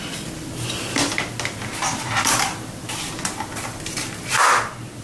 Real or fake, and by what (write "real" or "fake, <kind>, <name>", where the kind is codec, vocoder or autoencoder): real